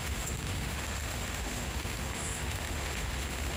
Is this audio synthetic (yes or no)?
yes